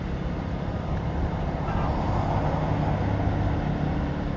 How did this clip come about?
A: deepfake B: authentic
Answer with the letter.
B